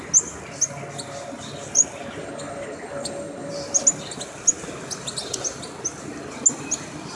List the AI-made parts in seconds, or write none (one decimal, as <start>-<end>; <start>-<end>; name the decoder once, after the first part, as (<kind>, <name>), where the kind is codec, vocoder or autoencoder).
2.2-3.5 (codec, HILCodec)